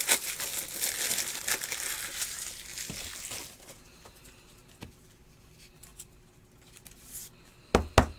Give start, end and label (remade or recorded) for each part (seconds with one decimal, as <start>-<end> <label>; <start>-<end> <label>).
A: 0.0-8.2 recorded